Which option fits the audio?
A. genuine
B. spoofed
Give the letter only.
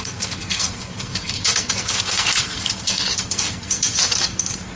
B